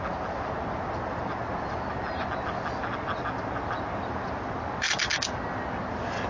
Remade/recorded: recorded